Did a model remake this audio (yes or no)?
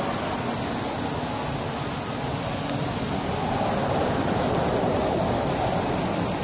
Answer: no